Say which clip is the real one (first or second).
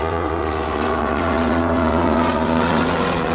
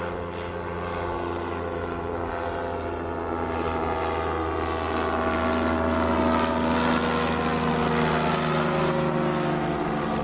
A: second